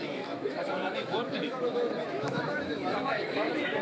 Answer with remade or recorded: remade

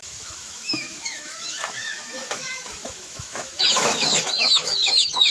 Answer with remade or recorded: remade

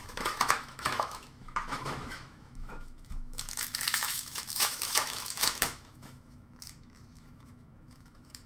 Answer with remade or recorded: remade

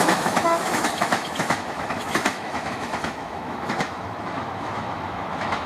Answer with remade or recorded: remade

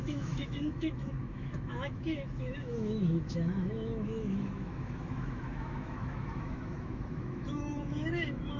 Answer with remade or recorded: remade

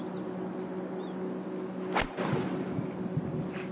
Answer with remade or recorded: recorded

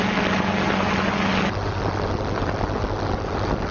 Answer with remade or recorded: recorded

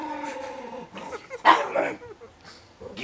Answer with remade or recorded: recorded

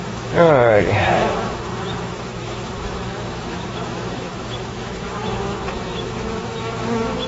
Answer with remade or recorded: remade